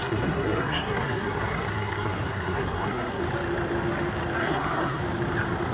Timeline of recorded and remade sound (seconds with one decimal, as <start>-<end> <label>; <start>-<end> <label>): 0.0-3.2 remade; 3.2-4.4 recorded; 4.4-5.0 remade; 5.0-5.7 recorded